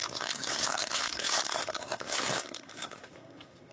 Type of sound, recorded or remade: remade